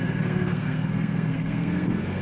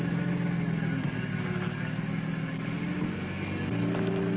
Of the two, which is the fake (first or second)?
first